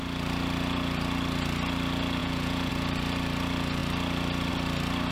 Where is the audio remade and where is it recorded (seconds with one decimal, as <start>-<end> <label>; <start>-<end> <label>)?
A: 0.0-2.2 recorded; 2.2-2.7 remade; 2.7-5.1 recorded